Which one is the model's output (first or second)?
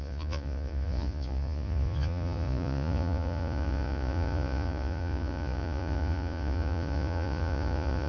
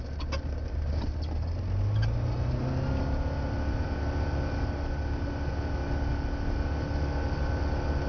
first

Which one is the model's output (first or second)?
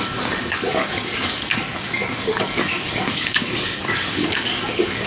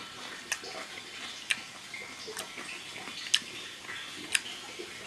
first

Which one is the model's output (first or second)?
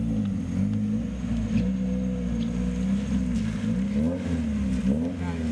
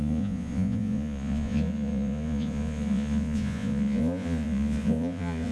second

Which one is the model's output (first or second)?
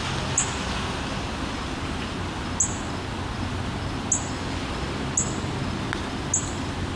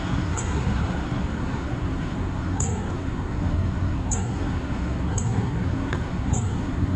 second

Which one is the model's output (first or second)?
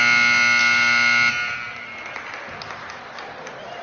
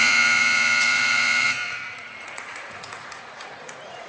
second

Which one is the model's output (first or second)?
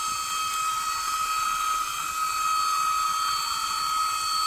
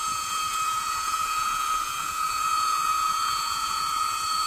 second